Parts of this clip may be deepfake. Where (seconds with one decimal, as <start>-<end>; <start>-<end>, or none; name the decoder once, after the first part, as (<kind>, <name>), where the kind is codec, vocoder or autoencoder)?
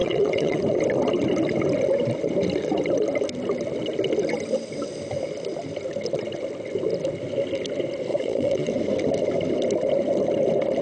0.0-0.6 (vocoder, Vocos); 8.1-8.7